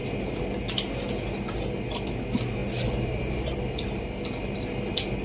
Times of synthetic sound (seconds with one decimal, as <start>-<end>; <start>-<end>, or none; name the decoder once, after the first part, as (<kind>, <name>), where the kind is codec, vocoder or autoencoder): none